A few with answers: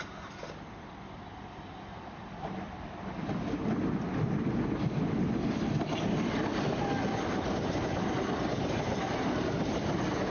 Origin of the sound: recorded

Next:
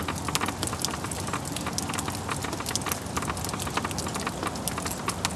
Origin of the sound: recorded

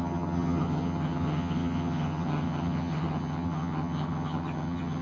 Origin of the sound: remade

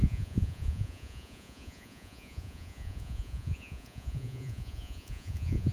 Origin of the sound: remade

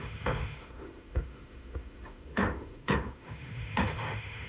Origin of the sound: remade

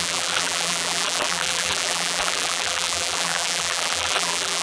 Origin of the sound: remade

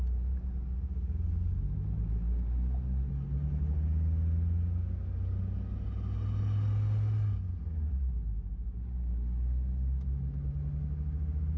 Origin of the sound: recorded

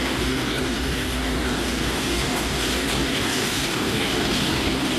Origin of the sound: remade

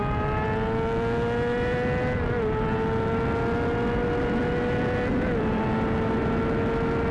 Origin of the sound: recorded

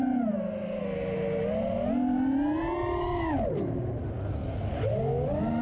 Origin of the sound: recorded